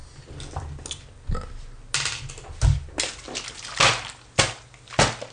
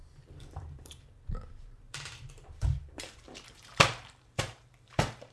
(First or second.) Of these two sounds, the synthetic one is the second